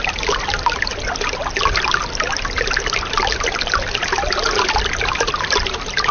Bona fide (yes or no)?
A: yes